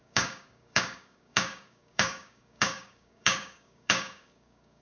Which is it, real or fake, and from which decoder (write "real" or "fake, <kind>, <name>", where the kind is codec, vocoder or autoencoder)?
fake, codec, DAC